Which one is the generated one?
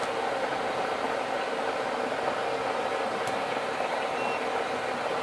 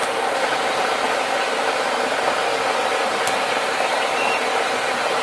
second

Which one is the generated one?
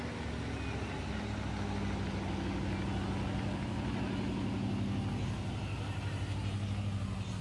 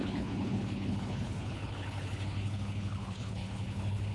second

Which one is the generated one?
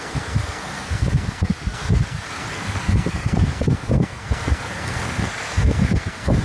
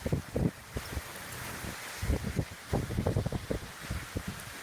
first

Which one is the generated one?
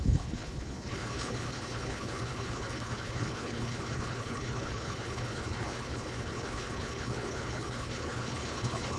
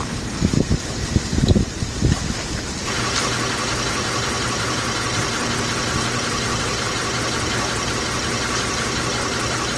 first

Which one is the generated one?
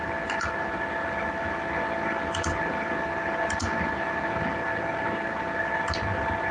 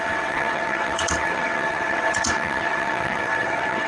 second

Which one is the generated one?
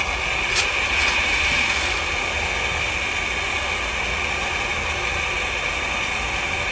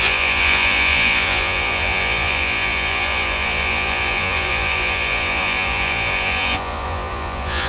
second